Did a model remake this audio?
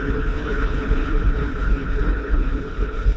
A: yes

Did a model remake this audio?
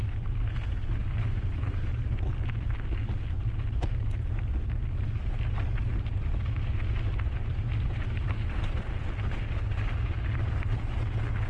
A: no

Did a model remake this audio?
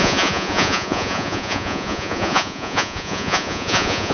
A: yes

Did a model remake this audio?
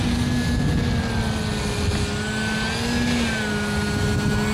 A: no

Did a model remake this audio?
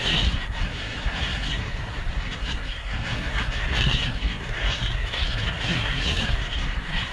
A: yes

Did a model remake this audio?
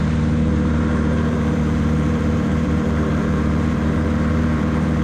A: yes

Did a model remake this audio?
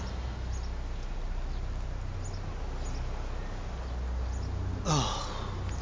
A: no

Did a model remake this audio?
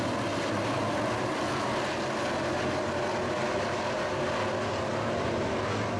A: no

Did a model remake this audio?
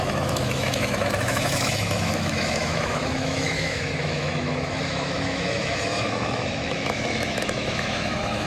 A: yes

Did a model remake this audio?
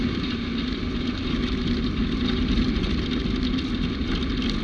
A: no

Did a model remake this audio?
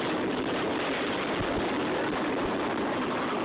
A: no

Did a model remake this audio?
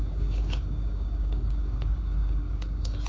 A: yes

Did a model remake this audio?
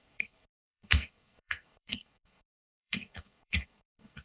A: yes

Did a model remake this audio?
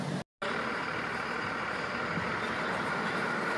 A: no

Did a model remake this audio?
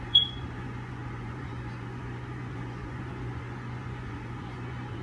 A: yes